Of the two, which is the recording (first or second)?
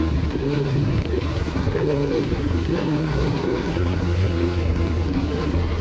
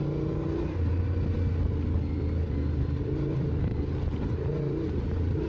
second